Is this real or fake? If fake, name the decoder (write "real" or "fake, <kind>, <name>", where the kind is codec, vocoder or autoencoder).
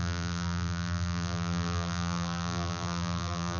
fake, vocoder, BigVGAN v2